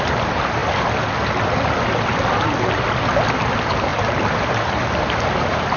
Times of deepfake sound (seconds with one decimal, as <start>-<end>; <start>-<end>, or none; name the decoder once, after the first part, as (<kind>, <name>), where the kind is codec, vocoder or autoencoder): 0.0-0.6 (vocoder, BigVGAN v2); 3.5-5.8